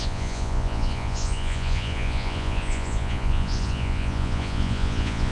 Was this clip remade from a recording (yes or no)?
yes